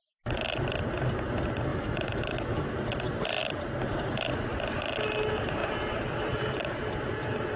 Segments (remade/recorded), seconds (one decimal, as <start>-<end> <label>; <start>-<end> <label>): 0.0-1.7 recorded; 1.7-2.7 remade; 2.7-7.6 recorded